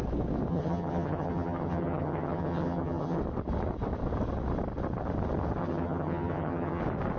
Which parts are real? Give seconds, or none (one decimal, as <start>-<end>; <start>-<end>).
0.0-0.5; 3.2-5.6; 6.8-7.2